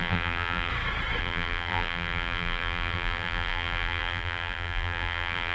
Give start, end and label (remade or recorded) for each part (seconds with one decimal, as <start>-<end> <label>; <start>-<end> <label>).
0.0-0.7 remade; 0.7-1.2 recorded; 1.2-5.5 remade